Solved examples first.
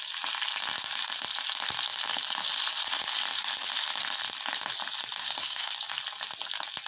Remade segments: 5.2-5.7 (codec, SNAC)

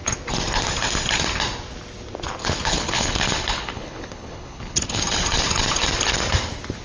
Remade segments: 2.4-5.0 (codec, HILCodec)

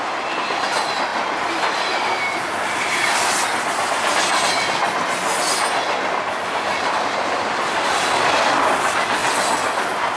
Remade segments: 0.0-4.3 (vocoder, BigVGAN v2); 6.7-9.2

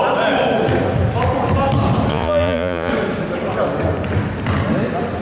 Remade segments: 2.1-2.9 (vocoder, Vocos)